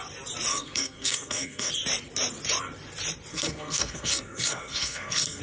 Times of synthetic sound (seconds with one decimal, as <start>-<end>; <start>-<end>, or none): 0.5-1.7; 3.3-5.4